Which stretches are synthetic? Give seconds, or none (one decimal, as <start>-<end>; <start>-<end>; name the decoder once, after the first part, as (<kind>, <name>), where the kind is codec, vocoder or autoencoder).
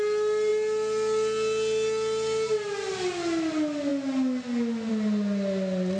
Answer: none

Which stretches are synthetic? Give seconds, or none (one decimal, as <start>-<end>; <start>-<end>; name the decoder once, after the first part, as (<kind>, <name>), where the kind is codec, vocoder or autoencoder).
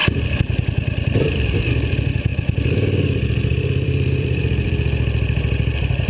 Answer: 0.0-1.7 (vocoder, BigVGAN v2); 2.3-6.1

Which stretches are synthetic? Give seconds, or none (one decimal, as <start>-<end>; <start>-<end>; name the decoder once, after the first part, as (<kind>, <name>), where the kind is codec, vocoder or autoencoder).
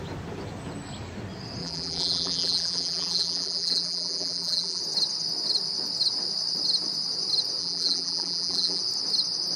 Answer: 1.6-4.8 (vocoder, BigVGAN v2); 7.6-8.8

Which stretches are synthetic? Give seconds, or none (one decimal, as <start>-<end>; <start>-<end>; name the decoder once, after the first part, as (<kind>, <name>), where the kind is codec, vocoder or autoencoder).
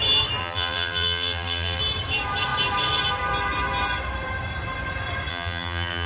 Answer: 0.4-1.8 (vocoder, BigVGAN v2); 5.3-6.1